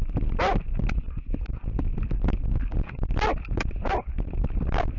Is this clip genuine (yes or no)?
yes